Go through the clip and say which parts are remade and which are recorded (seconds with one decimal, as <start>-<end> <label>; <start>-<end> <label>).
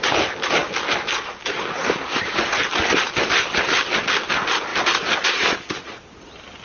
0.0-6.6 recorded